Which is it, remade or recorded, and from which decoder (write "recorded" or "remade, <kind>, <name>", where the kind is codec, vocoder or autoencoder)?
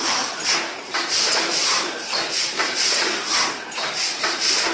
remade, vocoder, BigVGAN v2